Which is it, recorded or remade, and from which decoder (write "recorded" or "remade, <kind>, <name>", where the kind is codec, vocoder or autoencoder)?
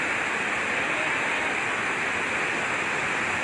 recorded